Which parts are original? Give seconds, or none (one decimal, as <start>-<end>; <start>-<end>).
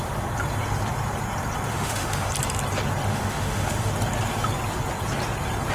0.0-1.7; 2.3-3.1; 3.9-5.7